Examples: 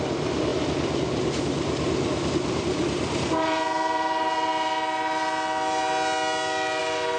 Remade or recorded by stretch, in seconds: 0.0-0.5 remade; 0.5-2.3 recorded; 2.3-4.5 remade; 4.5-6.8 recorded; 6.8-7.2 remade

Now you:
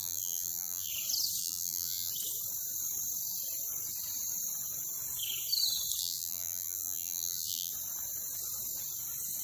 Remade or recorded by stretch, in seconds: 0.0-0.9 remade; 0.9-1.4 recorded; 1.4-2.1 remade; 2.1-6.0 recorded; 6.0-7.7 remade; 7.7-9.4 recorded

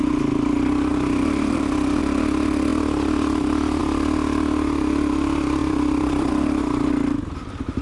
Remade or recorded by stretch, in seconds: 0.0-0.9 recorded; 0.9-2.0 remade; 2.0-5.6 recorded; 5.6-6.3 remade; 6.3-7.8 recorded